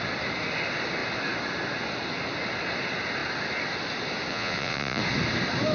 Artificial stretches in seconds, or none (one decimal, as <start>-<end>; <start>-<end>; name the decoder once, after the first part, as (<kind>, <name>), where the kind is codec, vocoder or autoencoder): 4.3-5.0 (vocoder, Vocos)